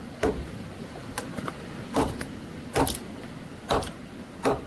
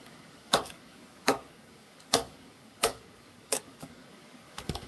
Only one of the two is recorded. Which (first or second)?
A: first